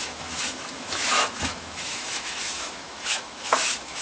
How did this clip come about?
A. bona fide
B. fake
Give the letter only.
B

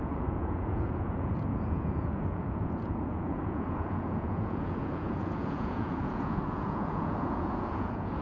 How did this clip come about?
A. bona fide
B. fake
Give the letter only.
B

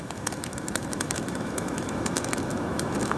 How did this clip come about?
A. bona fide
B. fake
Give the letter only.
B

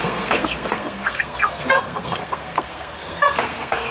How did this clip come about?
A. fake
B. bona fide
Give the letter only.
A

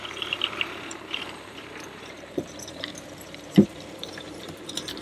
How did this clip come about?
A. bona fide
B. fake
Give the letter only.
B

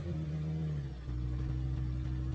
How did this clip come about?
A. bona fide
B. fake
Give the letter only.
A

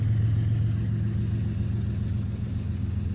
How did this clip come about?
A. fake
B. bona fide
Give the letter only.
B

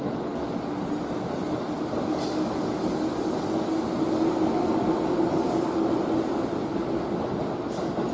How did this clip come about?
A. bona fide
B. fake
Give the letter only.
A